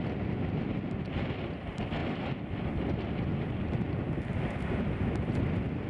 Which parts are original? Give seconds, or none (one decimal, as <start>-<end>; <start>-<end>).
0.0-5.9